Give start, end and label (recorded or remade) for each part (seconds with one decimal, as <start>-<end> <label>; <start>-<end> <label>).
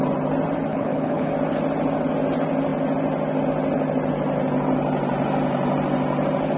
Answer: 0.0-0.7 recorded; 0.7-1.3 remade; 1.3-6.6 recorded